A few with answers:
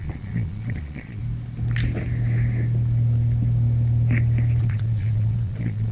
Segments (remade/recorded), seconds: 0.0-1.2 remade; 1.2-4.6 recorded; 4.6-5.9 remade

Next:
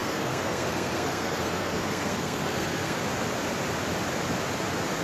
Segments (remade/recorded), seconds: 0.0-3.0 remade; 3.0-5.0 recorded

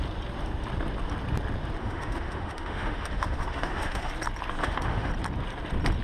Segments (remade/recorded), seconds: 0.0-1.8 recorded; 1.8-4.1 remade; 4.1-4.6 recorded; 4.6-5.1 remade; 5.1-6.0 recorded

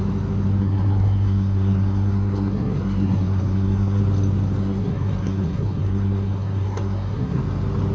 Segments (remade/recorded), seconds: 0.0-0.6 recorded; 0.6-4.0 remade; 4.0-4.6 recorded; 4.6-7.4 remade; 7.4-7.9 recorded

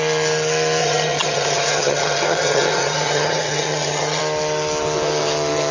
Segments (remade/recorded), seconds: 0.0-0.8 recorded; 0.8-4.2 remade; 4.2-5.7 recorded

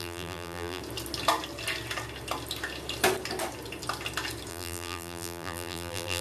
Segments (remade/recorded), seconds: 0.0-0.8 remade; 0.8-4.5 recorded; 4.5-6.2 remade

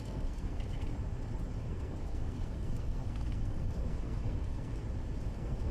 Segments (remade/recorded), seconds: 0.0-0.9 remade; 0.9-1.6 recorded; 1.6-4.8 remade; 4.8-5.3 recorded; 5.3-5.7 remade